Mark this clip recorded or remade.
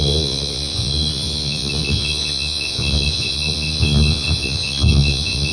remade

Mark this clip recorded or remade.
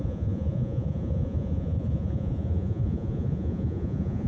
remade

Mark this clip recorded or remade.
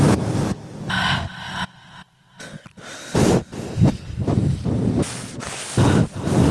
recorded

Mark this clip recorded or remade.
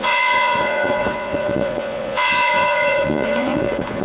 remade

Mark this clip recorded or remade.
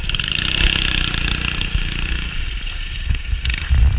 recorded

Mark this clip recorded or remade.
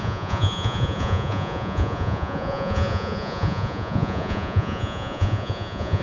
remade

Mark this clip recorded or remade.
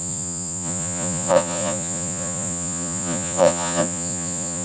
remade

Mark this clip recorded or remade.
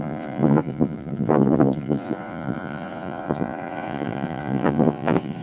remade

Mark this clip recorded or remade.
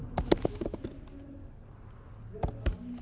recorded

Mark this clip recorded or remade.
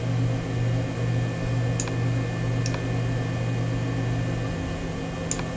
recorded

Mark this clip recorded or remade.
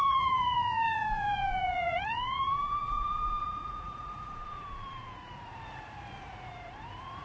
remade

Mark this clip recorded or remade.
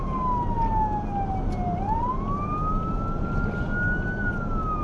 recorded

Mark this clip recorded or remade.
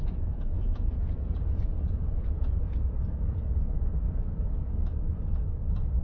remade